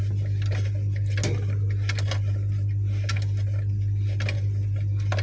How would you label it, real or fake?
real